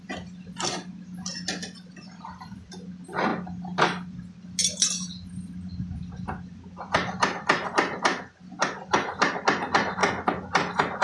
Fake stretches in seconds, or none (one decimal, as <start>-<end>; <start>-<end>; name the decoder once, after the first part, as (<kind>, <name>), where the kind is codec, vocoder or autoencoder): none